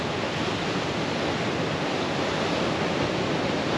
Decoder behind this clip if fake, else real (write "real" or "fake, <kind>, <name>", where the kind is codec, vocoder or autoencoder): real